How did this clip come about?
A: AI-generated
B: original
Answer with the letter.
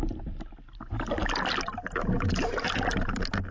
B